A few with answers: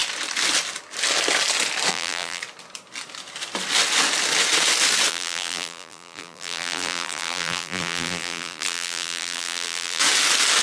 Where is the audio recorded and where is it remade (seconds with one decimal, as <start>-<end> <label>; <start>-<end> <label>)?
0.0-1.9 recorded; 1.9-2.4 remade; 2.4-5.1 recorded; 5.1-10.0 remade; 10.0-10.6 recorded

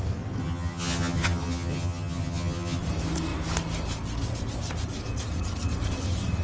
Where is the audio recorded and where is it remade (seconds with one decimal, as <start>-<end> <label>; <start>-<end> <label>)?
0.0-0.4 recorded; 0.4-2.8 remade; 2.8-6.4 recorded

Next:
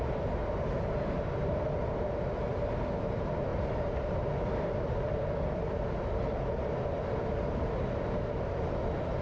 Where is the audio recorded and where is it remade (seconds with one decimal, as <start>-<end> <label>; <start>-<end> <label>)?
0.0-3.5 recorded; 3.5-4.3 remade; 4.3-9.2 recorded